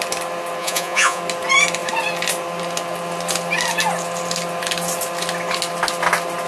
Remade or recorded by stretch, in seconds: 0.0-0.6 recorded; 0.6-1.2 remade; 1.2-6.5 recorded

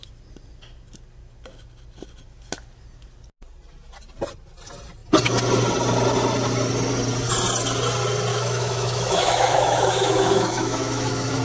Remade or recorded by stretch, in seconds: 0.0-8.3 recorded; 8.3-11.4 remade

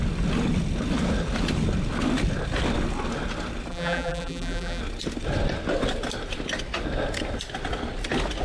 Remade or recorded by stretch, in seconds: 0.0-3.7 recorded; 3.7-4.8 remade; 4.8-8.4 recorded